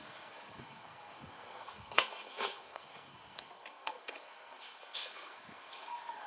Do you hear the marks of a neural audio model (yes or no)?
yes